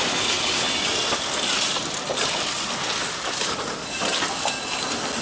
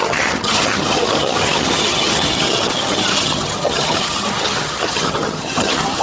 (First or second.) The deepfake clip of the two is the second